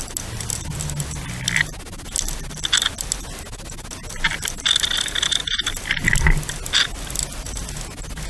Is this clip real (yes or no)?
yes